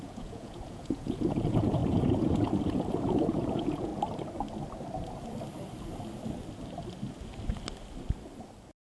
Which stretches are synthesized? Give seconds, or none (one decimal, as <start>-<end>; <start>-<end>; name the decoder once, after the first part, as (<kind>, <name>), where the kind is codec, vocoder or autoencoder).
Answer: 0.0-3.9 (vocoder, Vocos)